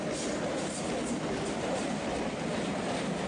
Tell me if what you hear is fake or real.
real